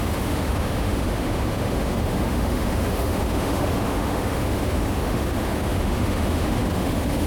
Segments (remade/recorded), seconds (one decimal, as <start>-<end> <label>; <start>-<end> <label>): 0.0-7.3 remade